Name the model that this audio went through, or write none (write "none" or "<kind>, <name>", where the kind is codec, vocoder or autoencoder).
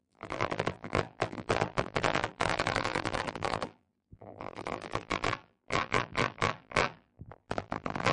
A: vocoder, BigVGAN v2